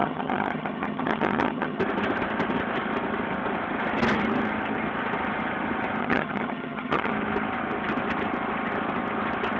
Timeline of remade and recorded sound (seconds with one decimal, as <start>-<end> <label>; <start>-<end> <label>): 0.0-1.8 remade; 1.8-6.0 recorded; 6.0-7.1 remade; 7.1-9.6 recorded